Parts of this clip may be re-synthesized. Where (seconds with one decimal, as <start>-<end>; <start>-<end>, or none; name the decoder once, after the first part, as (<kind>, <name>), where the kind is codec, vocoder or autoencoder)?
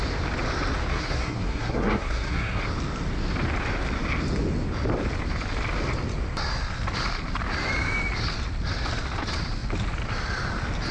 0.9-2.6 (codec, SNAC)